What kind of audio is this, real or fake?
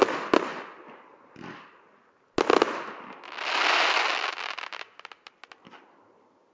real